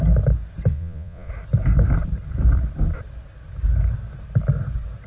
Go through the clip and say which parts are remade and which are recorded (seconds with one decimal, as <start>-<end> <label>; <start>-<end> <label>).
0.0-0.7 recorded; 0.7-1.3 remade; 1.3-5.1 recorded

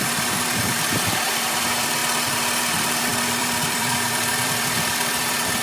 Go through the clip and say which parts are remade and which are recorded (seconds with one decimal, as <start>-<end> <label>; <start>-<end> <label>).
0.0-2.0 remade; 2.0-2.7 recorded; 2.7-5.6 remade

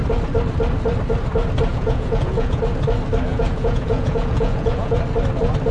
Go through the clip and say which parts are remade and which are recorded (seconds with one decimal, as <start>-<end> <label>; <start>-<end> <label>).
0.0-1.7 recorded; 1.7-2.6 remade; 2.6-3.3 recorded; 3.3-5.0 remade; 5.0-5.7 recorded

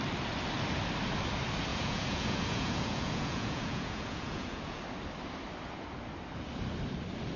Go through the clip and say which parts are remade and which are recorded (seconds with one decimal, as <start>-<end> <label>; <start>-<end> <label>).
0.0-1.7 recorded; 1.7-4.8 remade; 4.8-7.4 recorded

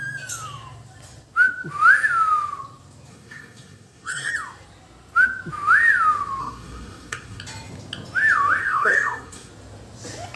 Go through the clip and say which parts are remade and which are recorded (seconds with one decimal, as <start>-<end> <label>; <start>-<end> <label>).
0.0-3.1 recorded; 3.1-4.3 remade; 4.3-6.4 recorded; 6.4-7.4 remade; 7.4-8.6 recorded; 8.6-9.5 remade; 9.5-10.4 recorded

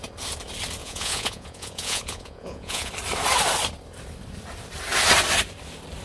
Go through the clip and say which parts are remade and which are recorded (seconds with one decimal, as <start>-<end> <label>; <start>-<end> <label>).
0.0-0.8 recorded; 0.8-2.9 remade; 2.9-6.0 recorded

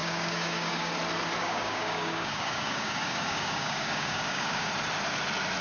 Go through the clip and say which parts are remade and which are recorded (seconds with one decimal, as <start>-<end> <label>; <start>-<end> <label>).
0.0-0.9 remade; 0.9-1.4 recorded; 1.4-4.7 remade; 4.7-5.6 recorded

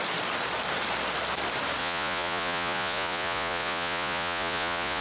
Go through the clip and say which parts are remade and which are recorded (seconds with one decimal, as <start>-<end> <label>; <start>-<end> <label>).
0.0-1.8 recorded; 1.8-5.0 remade